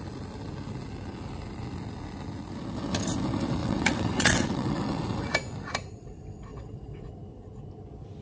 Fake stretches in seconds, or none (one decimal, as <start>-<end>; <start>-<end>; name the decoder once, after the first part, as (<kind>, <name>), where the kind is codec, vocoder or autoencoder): 3.6-5.0 (vocoder, WaveNeXt); 6.5-7.1